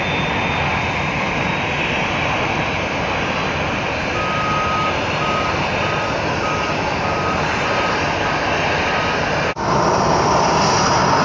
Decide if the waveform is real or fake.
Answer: real